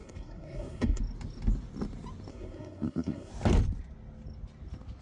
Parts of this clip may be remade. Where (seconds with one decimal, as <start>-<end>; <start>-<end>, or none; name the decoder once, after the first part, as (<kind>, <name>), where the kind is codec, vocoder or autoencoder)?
0.0-1.0 (codec, SNAC); 2.3-3.3